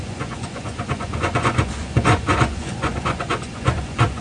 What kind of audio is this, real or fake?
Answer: fake